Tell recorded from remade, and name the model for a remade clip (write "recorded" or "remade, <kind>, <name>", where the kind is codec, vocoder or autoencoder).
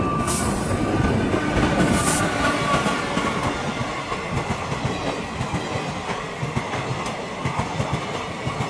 recorded